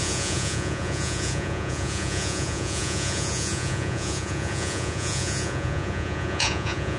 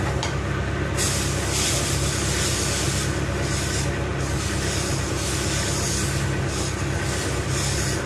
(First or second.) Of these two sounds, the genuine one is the second